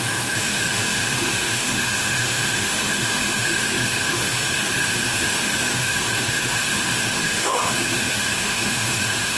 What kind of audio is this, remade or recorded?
remade